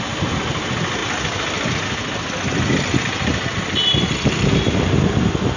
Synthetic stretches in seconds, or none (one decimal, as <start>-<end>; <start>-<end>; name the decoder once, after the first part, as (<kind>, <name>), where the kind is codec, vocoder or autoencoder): none